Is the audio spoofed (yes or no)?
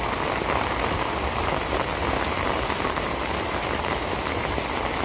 no